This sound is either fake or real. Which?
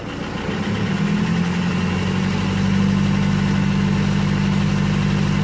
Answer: real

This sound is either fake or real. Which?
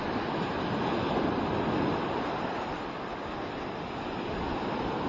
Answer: real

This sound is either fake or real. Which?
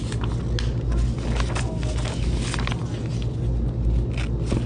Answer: real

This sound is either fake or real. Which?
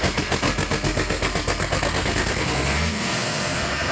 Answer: fake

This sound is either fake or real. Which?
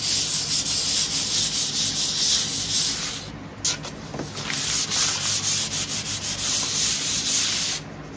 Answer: real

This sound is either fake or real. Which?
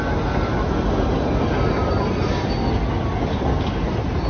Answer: real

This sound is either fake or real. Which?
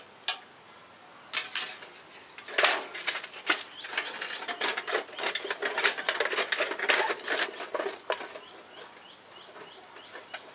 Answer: real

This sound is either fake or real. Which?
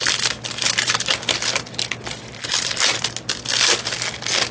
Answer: real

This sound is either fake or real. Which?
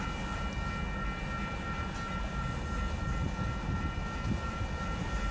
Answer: real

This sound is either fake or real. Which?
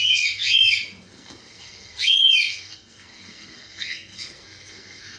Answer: fake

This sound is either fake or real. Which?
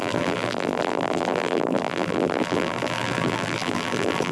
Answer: fake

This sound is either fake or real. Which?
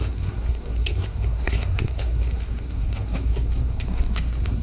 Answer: fake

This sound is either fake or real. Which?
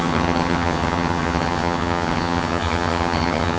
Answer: fake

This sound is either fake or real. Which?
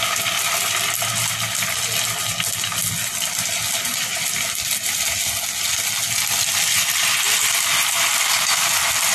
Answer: real